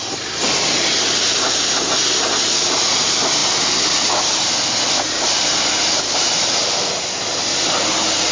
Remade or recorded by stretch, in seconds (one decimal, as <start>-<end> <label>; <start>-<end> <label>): 0.0-8.3 recorded